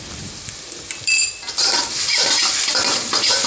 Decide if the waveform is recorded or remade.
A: remade